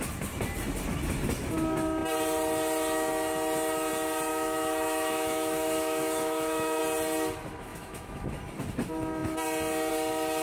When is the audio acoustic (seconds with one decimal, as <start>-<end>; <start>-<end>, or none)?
0.0-4.3; 6.8-7.7; 8.3-10.4